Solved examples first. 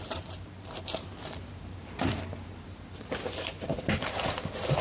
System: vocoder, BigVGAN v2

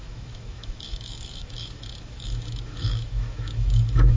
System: autoencoder, DAC-VAE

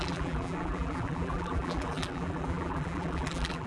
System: vocoder, BigVGAN v2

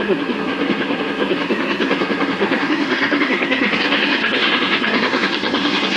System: codec, SNAC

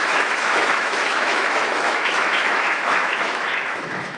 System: autoencoder, DAC-VAE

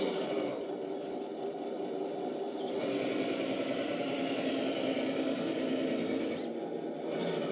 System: none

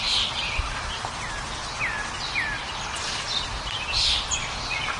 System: none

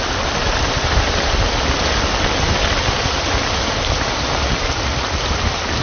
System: none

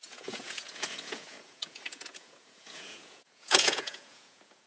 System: vocoder, Vocos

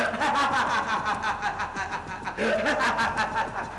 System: none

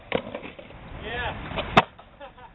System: vocoder, BigVGAN v2